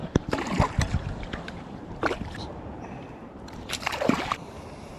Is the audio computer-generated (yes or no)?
yes